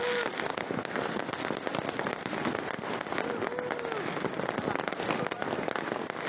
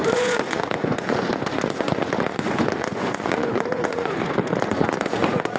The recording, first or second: first